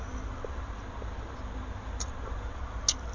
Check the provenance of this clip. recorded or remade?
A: recorded